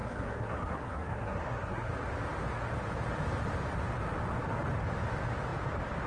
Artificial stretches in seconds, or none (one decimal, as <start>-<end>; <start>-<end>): 0.0-1.9